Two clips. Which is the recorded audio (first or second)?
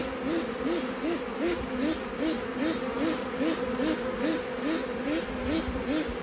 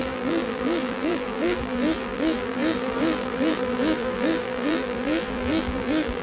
first